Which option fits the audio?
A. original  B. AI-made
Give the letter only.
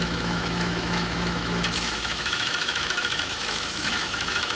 B